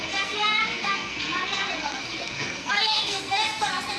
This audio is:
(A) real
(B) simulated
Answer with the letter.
B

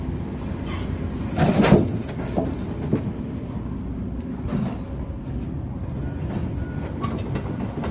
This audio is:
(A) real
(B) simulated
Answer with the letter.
A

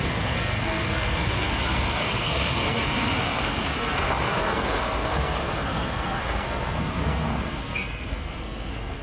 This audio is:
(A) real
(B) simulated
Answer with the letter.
B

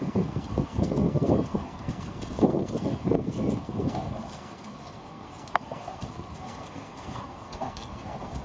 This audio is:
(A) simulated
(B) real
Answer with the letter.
A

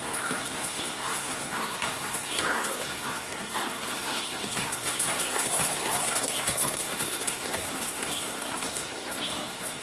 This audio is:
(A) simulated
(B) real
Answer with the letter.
A